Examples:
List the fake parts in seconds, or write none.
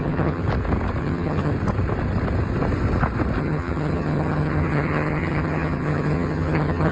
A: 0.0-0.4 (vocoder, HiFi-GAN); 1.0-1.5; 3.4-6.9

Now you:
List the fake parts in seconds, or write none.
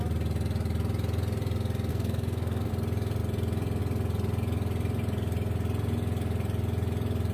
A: 1.9-2.7 (codec, SNAC)